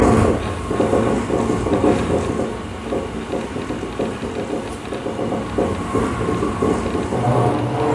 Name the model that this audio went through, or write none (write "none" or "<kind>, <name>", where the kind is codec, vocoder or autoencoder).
none